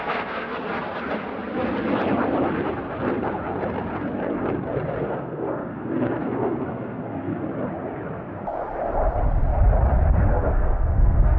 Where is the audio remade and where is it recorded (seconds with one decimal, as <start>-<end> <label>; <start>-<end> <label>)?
0.0-0.5 remade; 0.5-5.0 recorded; 5.0-7.3 remade; 7.3-10.2 recorded; 10.2-11.4 remade